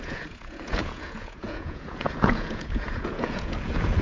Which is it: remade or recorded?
remade